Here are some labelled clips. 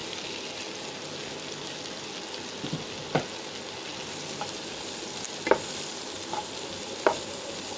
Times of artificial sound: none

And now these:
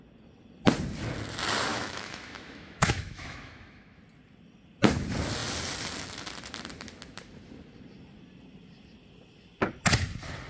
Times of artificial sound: 1.7-4.0 (autoencoder, DAC-VAE)